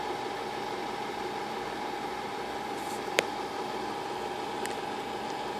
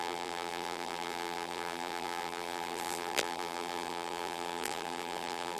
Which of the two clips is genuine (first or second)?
first